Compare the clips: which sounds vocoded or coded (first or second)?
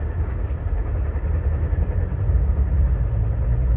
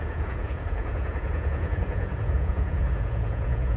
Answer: second